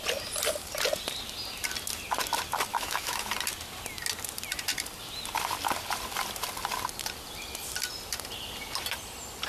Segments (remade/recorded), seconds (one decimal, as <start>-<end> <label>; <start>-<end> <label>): 0.0-2.7 recorded; 2.7-3.3 remade; 3.3-9.5 recorded